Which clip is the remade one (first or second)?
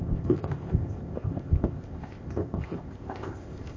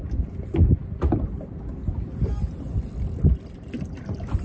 first